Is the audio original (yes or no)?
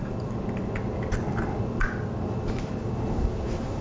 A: yes